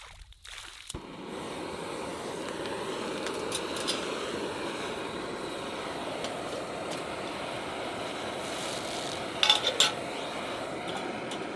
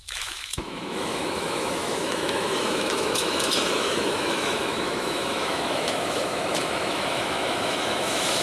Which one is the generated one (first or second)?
second